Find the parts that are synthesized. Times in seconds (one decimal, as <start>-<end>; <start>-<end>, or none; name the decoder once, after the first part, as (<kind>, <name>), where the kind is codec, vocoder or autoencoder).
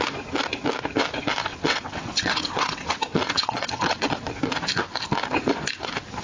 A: 1.5-4.1 (vocoder, WaveNeXt)